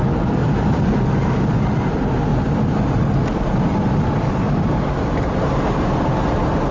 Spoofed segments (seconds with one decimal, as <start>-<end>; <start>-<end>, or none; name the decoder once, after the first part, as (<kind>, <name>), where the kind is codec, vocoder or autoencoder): 0.4-1.0 (vocoder, BigVGAN v2); 2.3-4.8